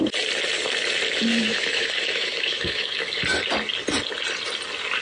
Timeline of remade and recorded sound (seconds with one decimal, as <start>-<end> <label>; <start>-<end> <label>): 0.0-1.3 recorded; 1.3-3.2 remade; 3.2-5.0 recorded